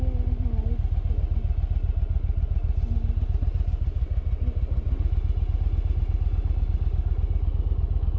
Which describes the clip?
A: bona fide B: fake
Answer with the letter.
A